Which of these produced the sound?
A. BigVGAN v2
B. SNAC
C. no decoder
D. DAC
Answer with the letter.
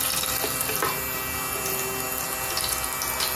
C